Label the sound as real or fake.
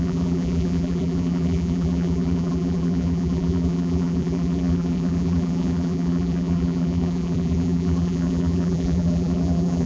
fake